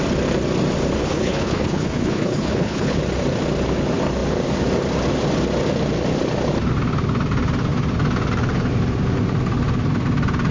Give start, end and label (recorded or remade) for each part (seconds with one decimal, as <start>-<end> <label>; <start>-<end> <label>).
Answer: 0.0-1.0 recorded; 1.0-3.0 remade; 3.0-10.5 recorded